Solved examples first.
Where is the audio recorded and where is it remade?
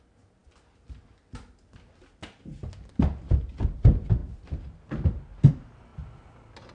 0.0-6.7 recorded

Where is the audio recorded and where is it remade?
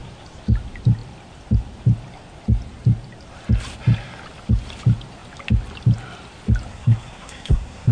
0.0-6.7 recorded; 6.7-7.9 remade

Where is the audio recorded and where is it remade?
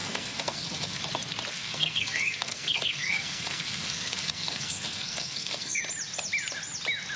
0.0-1.0 remade; 1.0-1.5 recorded; 1.5-5.8 remade; 5.8-7.2 recorded